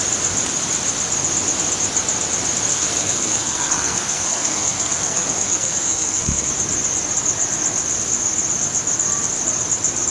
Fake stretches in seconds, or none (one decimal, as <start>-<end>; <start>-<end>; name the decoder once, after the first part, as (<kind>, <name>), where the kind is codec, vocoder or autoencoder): 2.7-6.5 (codec, SNAC)